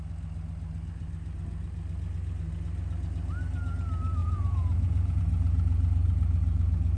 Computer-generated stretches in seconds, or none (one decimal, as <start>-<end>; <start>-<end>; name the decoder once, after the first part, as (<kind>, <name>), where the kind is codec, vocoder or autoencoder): 4.2-5.2 (vocoder, Vocos)